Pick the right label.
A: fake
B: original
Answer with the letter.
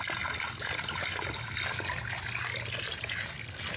B